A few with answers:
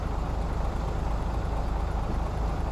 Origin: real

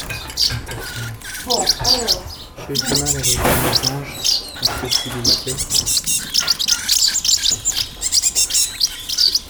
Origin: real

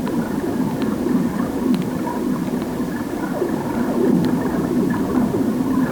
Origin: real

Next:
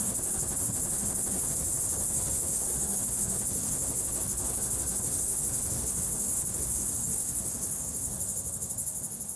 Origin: fake